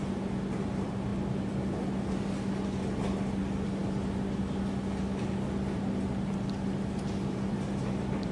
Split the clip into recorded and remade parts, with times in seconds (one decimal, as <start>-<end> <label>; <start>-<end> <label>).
0.0-8.3 recorded